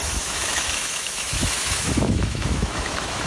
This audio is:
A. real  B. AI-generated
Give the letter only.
B